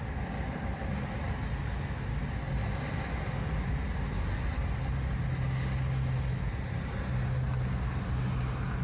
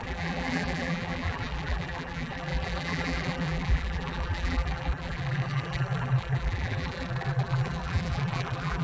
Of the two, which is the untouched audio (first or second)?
first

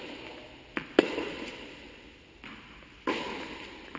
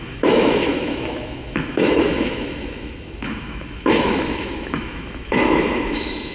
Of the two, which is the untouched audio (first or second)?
first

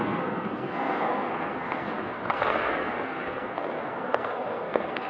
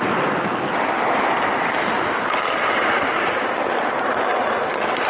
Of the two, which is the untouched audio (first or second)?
second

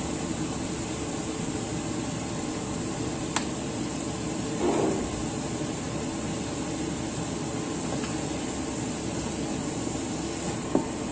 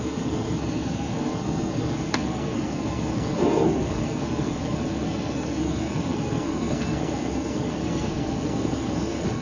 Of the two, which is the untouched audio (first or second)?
first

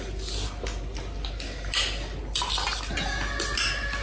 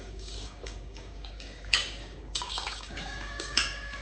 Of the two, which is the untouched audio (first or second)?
first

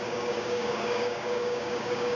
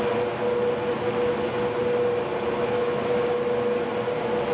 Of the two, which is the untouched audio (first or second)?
second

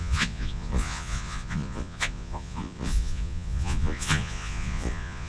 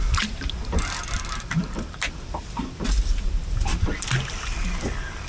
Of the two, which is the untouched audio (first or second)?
second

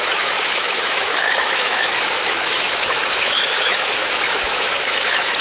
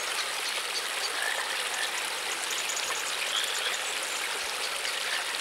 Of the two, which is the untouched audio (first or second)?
second